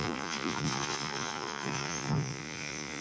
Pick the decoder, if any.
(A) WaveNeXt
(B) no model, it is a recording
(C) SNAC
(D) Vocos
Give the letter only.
D